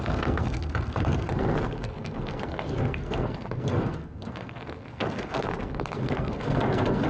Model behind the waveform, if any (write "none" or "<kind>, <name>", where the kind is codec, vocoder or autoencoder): codec, SNAC